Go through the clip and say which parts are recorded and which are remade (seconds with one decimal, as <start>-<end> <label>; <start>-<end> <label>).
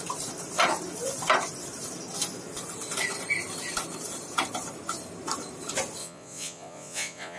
0.0-6.0 recorded; 6.0-7.4 remade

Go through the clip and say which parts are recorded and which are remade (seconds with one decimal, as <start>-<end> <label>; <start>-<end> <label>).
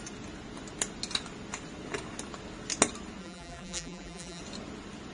0.0-3.2 recorded; 3.2-4.4 remade; 4.4-5.1 recorded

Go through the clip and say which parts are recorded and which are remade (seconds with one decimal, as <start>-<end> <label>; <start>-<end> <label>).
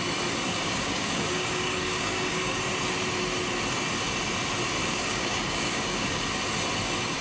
0.0-0.5 recorded; 0.5-2.6 remade; 2.6-4.8 recorded; 4.8-6.2 remade; 6.2-7.2 recorded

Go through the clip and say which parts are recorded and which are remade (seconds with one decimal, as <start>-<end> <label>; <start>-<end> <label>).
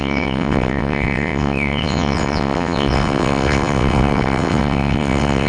0.0-5.5 remade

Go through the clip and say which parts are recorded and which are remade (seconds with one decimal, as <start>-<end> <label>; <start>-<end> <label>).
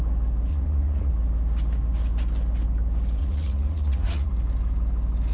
0.0-0.5 recorded; 0.5-1.1 remade; 1.1-3.2 recorded; 3.2-4.3 remade; 4.3-5.3 recorded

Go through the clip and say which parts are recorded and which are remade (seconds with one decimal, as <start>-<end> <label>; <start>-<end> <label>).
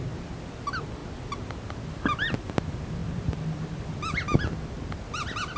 0.0-3.0 recorded; 3.0-3.8 remade; 3.8-5.6 recorded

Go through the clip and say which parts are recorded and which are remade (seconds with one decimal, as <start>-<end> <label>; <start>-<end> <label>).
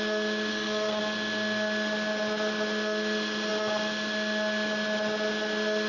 0.0-0.5 recorded; 0.5-1.0 remade; 1.0-5.9 recorded